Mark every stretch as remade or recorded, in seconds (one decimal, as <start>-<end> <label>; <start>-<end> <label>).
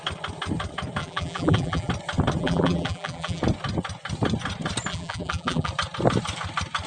0.0-1.0 recorded; 1.0-1.9 remade; 1.9-2.4 recorded; 2.4-3.4 remade; 3.4-4.9 recorded; 4.9-5.7 remade; 5.7-6.9 recorded